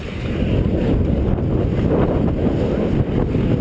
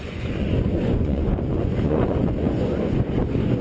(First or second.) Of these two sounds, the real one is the first